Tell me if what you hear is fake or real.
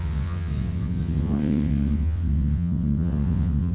fake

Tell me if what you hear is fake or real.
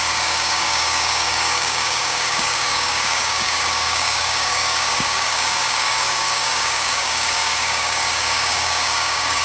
fake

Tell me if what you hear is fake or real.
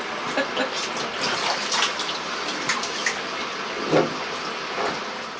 real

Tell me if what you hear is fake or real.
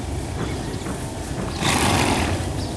real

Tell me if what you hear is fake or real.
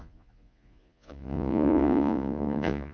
fake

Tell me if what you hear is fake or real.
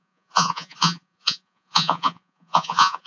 fake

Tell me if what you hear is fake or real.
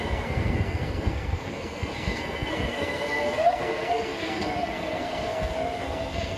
fake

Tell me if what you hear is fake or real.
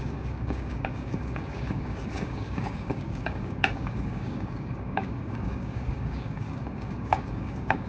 fake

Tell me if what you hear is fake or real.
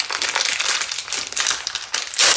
real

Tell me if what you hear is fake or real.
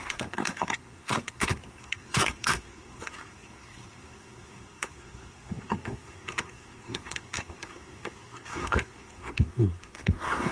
fake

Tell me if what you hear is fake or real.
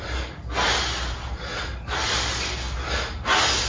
real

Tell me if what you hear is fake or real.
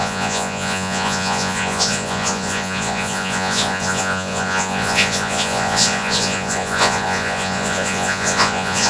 fake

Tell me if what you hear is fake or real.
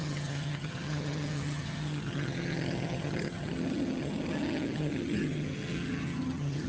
fake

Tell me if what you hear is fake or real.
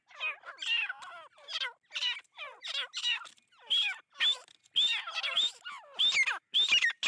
real